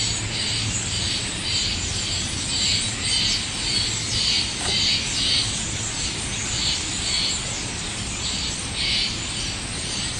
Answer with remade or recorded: recorded